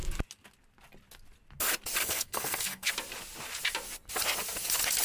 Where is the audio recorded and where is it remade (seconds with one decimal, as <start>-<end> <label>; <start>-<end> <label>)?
0.0-2.0 recorded; 2.0-2.9 remade; 2.9-5.0 recorded